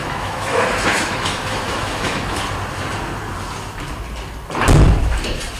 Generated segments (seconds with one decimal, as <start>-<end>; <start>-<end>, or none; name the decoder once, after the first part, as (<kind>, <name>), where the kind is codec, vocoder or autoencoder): 0.0-2.4 (autoencoder, DAC-VAE)